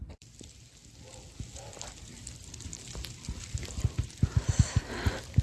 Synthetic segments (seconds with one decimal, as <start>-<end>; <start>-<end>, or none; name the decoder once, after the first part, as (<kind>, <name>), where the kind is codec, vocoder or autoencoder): 0.0-0.7 (vocoder, BigVGAN v2); 2.1-4.8